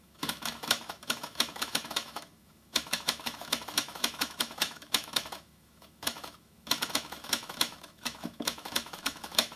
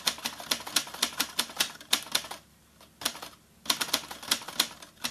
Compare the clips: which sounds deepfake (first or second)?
first